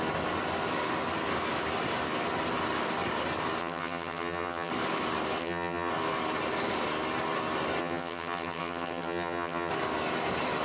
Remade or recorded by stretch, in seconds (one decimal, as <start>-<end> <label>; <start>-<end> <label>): 0.0-3.6 recorded; 3.6-4.7 remade; 4.7-5.4 recorded; 5.4-5.9 remade; 5.9-7.8 recorded; 7.8-9.7 remade; 9.7-10.6 recorded